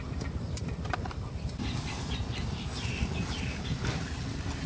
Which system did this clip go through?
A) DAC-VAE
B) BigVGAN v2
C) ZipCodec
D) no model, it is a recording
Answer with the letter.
D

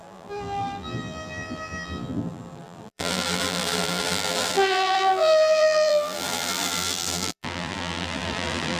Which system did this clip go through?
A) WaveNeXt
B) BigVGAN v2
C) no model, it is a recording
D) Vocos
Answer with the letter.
B